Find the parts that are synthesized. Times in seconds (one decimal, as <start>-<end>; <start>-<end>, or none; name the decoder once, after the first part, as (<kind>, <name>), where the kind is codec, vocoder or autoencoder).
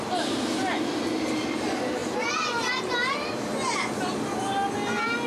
none